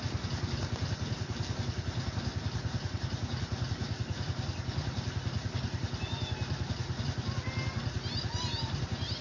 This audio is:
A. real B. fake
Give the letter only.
A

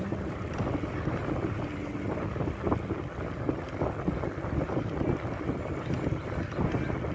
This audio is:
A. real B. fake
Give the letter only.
A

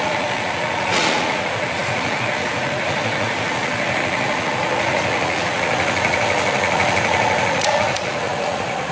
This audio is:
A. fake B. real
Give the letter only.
A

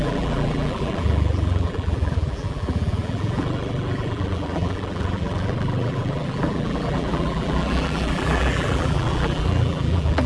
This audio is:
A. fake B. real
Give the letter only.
A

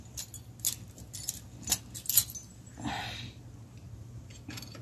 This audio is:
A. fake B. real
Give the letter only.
B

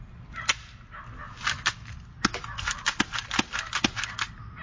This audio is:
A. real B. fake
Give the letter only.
A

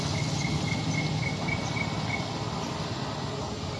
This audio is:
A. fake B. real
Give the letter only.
B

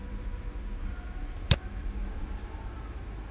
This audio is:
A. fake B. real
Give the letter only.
B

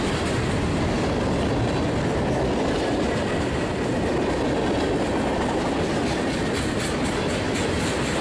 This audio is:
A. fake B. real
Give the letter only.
B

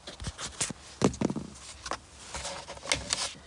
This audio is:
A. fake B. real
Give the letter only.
B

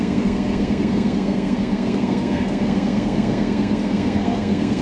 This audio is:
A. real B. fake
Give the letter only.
B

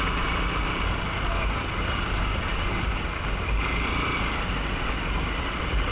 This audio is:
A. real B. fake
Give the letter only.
A